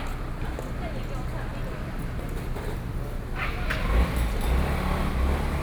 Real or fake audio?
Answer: real